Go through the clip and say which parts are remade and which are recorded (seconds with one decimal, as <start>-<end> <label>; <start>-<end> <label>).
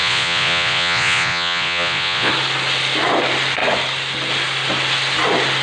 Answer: 0.0-2.3 remade; 2.3-5.6 recorded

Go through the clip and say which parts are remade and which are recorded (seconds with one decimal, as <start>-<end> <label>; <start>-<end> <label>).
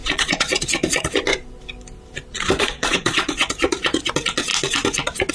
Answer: 0.0-1.2 remade; 1.2-2.3 recorded; 2.3-4.1 remade; 4.1-5.3 recorded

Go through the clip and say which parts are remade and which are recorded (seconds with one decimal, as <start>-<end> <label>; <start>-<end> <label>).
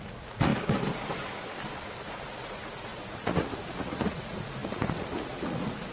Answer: 0.0-0.5 remade; 0.5-2.1 recorded; 2.1-5.9 remade